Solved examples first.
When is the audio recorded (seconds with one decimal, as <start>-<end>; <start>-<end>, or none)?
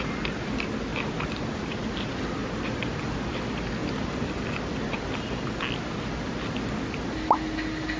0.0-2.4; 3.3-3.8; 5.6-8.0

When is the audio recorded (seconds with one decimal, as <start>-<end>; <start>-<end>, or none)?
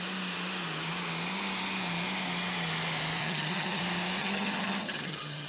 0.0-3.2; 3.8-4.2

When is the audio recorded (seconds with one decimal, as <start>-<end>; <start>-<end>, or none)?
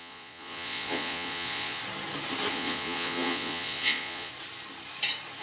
1.8-2.5; 4.3-5.4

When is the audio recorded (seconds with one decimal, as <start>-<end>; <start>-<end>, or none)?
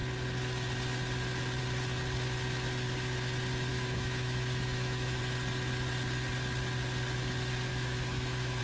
0.0-3.7; 5.2-7.7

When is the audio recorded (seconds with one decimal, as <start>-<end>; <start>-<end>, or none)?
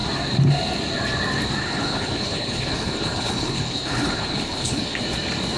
0.0-1.6; 5.0-5.6